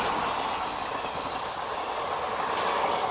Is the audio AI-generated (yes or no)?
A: no